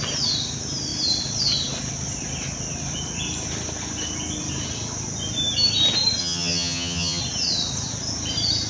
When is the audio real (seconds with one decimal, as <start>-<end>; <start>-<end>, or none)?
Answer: 0.0-6.2; 7.2-8.7